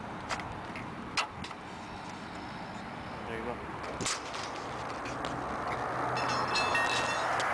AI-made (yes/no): no